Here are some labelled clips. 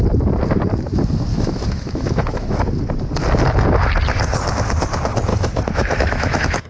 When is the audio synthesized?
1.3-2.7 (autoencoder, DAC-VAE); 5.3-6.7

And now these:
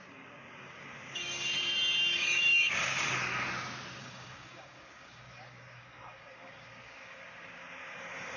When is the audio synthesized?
0.0-3.3 (codec, DAC); 4.0-8.4

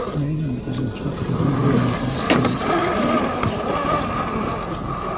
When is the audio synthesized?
none

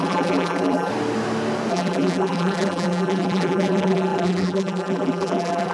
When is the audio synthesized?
0.0-0.9 (vocoder, BigVGAN v2); 1.7-5.7

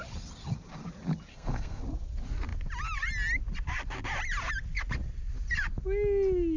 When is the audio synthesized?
1.3-1.8 (codec, SNAC)

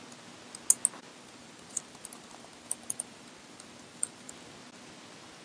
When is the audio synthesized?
1.1-4.3 (vocoder, BigVGAN v2)

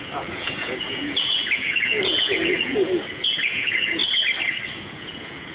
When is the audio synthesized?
0.0-4.0 (vocoder, Vocos); 4.7-5.5

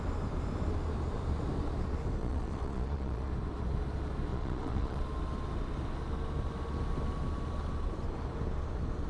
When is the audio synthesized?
2.2-3.3 (vocoder, Vocos); 4.3-5.0